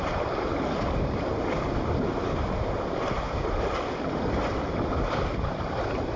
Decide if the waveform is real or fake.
fake